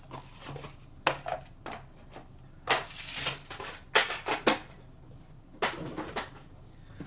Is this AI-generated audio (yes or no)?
no